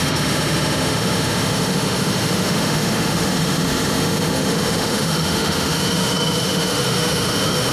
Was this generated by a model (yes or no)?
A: yes